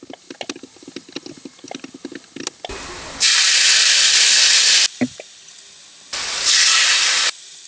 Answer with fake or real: real